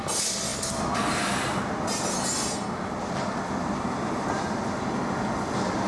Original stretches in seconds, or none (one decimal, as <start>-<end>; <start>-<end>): 0.0-5.9